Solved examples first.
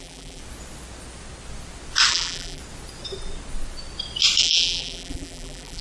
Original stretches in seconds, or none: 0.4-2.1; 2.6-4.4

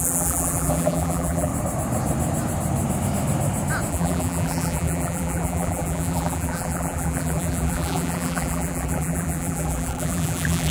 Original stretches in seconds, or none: 1.5-3.9

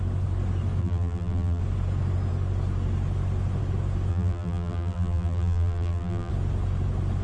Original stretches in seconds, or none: 0.0-0.8; 1.6-4.1; 6.3-7.2

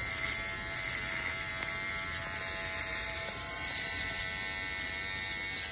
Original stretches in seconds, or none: 0.0-2.9; 4.2-5.7

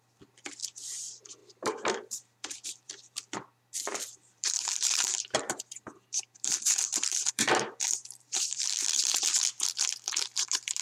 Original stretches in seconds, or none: 0.0-1.4; 2.9-4.1; 9.0-10.8

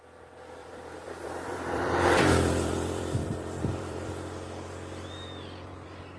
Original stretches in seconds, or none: 0.0-0.6; 4.1-6.2